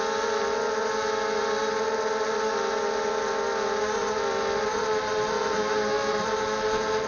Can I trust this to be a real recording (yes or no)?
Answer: yes